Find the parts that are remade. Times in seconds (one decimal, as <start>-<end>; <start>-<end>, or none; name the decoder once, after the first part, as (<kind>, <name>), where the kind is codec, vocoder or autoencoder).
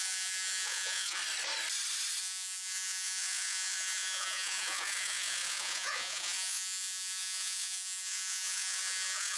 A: 0.0-1.2 (vocoder, Vocos); 2.2-9.4